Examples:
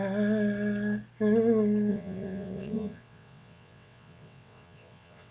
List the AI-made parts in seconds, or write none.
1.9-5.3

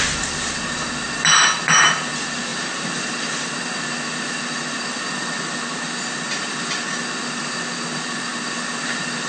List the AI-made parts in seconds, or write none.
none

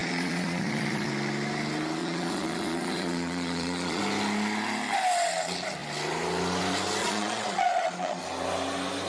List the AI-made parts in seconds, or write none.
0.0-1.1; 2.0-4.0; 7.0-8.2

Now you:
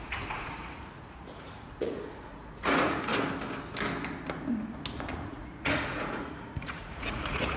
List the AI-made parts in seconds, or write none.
0.0-3.1; 4.9-7.6

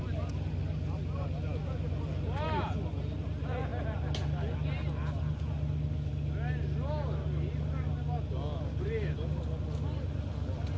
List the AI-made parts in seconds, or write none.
none

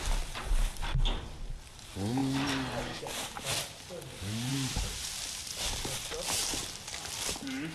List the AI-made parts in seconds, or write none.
none